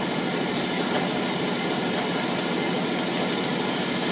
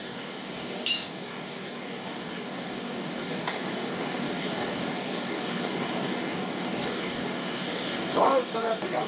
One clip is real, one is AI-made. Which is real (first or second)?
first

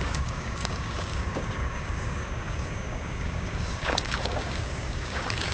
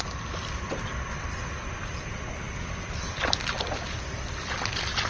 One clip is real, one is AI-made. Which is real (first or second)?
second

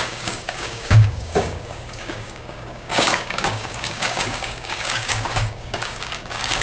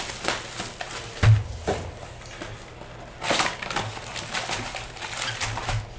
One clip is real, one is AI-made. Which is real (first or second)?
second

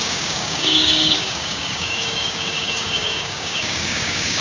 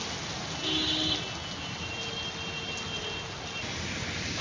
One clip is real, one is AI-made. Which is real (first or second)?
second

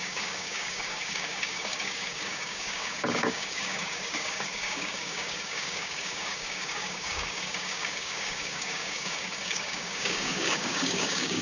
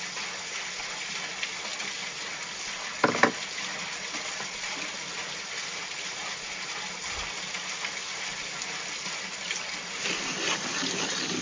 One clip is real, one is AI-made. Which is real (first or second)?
second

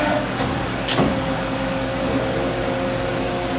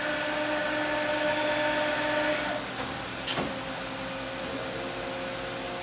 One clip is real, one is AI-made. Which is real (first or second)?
second